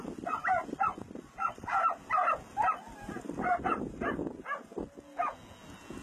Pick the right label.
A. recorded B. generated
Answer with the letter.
A